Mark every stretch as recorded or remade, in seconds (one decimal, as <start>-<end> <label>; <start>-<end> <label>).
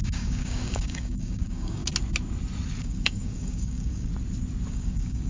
0.0-1.8 remade; 1.8-2.8 recorded; 2.8-4.1 remade; 4.1-4.7 recorded; 4.7-5.3 remade